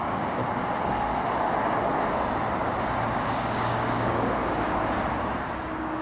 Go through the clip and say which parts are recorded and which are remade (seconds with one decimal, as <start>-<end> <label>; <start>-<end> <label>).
0.0-0.4 remade; 0.4-3.4 recorded; 3.4-4.4 remade; 4.4-5.6 recorded; 5.6-6.0 remade

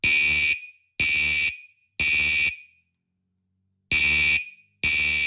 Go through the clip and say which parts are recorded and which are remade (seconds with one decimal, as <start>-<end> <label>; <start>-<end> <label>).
0.0-5.3 recorded

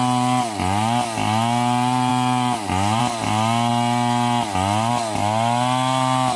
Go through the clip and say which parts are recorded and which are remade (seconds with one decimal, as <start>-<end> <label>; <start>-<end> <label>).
0.0-6.4 recorded

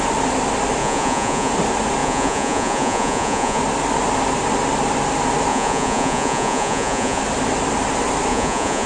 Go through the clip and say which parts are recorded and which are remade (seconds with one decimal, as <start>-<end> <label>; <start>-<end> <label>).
0.0-0.8 recorded; 0.8-1.5 remade; 1.5-2.0 recorded; 2.0-3.6 remade; 3.6-5.5 recorded; 5.5-7.2 remade; 7.2-8.3 recorded; 8.3-8.9 remade

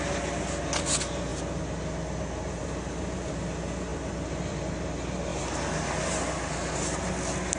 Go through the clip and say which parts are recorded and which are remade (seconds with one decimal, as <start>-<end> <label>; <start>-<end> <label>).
0.0-3.9 recorded; 3.9-4.7 remade; 4.7-7.6 recorded

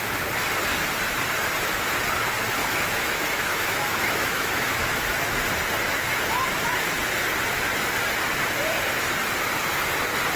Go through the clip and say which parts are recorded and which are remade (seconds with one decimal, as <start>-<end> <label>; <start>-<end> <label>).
0.0-2.6 recorded; 2.6-5.1 remade; 5.1-10.4 recorded